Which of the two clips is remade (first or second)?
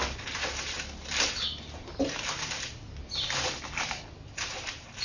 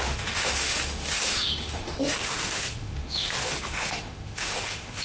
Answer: second